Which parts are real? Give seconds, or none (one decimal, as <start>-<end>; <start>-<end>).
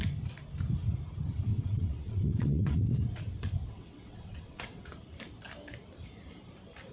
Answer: 0.0-1.5; 2.8-3.7; 4.9-6.9